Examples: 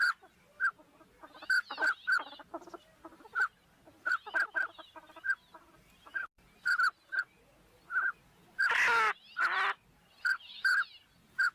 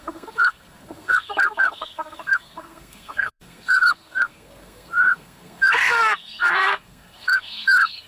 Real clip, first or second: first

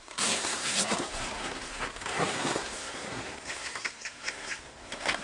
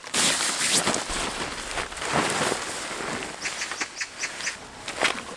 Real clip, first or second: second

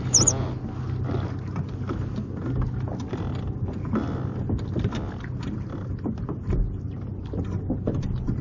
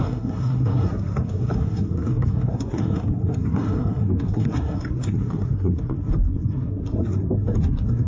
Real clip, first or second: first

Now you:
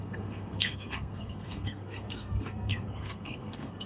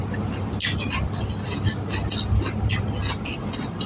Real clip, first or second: second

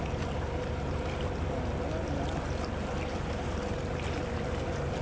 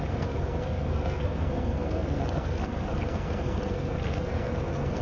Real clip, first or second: first